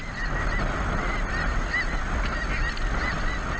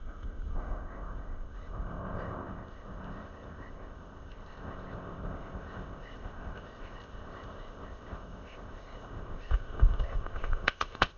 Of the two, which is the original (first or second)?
first